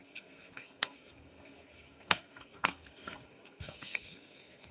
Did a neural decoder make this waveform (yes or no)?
yes